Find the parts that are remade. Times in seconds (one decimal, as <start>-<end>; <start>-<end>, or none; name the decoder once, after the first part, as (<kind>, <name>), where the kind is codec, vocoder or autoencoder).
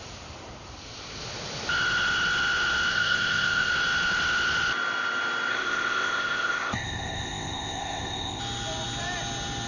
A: 2.9-3.7 (codec, ZipCodec); 5.5-8.4